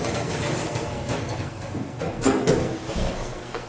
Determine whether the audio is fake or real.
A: fake